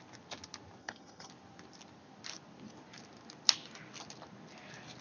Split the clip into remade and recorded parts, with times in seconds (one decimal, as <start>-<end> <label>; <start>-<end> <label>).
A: 0.0-0.8 recorded; 0.8-1.3 remade; 1.3-5.0 recorded